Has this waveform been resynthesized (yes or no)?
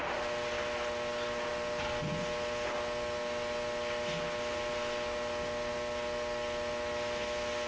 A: no